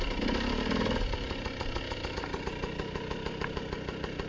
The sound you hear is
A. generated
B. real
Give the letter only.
B